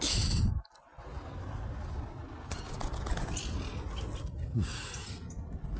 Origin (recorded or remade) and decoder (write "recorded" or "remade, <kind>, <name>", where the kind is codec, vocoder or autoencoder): recorded